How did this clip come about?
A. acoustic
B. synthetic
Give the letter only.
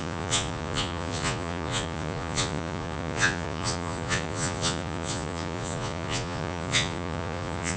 B